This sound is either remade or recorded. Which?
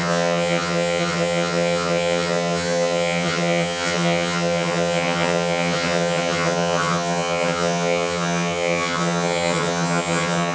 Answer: remade